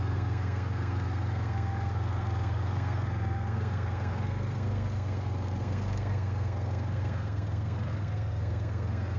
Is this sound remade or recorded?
remade